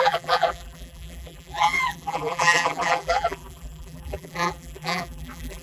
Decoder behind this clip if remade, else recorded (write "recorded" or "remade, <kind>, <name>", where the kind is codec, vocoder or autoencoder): remade, vocoder, BigVGAN v2